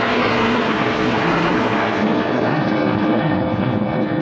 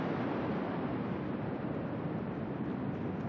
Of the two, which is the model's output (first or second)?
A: first